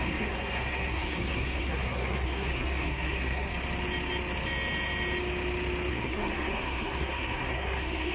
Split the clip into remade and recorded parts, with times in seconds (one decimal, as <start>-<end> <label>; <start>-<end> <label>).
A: 0.0-3.5 remade; 3.5-5.9 recorded; 5.9-8.1 remade